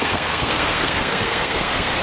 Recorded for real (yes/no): no